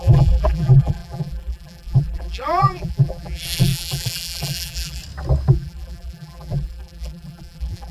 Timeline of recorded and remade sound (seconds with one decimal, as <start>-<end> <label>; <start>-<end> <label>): 0.0-5.0 remade; 5.0-5.5 recorded; 5.5-7.9 remade